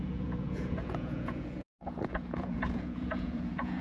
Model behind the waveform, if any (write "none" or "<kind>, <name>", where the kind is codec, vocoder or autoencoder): vocoder, Vocos